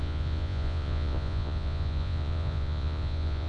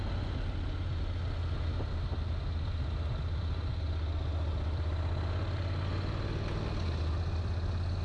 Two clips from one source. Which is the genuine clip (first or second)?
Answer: second